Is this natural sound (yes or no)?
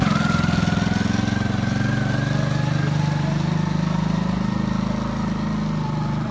yes